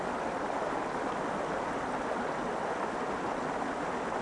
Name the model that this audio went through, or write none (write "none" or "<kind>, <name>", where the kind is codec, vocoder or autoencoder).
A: none